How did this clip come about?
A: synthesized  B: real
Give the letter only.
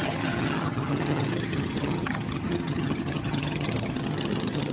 A